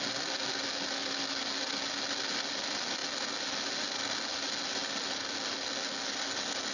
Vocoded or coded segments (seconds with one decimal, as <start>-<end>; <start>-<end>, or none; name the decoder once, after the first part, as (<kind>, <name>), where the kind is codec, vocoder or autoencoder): none